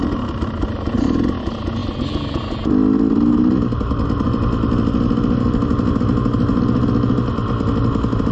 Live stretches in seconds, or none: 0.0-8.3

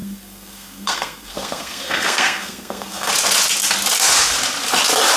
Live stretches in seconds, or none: 3.1-5.2

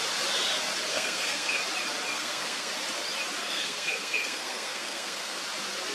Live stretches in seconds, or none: 0.0-0.9; 1.6-2.1; 2.7-3.4; 5.4-5.9

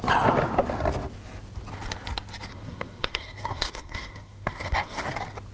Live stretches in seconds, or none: 0.0-2.5; 5.0-5.5

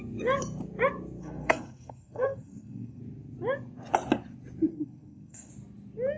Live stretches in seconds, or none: 0.0-1.2; 3.0-4.7; 5.5-6.2

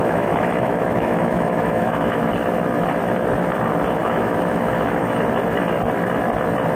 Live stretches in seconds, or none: 2.3-4.0; 5.2-6.8